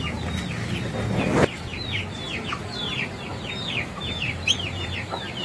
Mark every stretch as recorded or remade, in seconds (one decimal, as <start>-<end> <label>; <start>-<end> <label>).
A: 0.0-1.7 recorded; 1.7-4.9 remade; 4.9-5.4 recorded